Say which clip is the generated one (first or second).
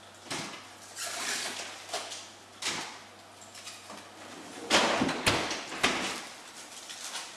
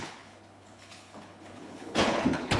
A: second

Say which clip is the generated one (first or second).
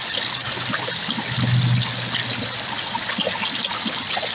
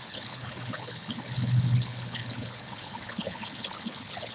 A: second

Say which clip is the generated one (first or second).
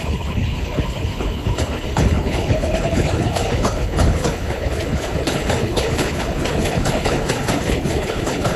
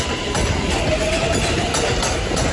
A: first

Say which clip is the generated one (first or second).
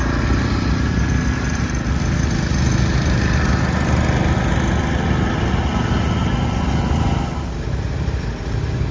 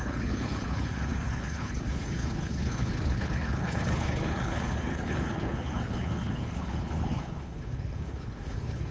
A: second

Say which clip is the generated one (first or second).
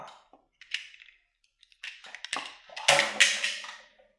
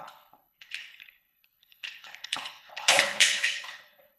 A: second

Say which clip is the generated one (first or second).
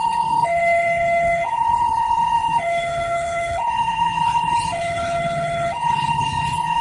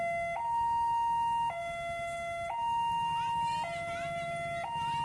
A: first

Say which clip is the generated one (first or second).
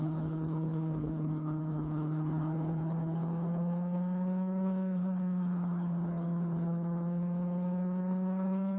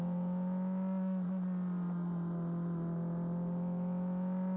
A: first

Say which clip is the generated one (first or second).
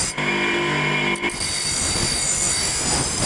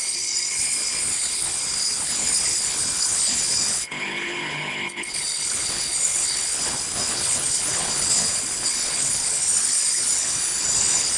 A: second